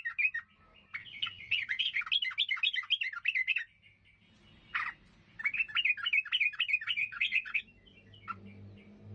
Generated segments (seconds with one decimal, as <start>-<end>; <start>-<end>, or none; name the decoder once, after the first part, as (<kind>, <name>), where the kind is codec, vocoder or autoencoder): 1.0-2.0 (vocoder, WaveNeXt); 7.0-7.6